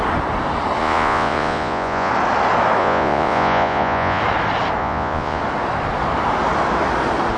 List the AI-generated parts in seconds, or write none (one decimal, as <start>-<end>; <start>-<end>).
0.8-2.1; 2.8-4.2; 4.8-5.4